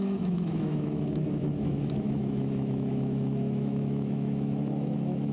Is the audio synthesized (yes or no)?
yes